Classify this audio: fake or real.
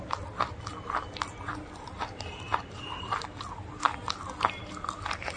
fake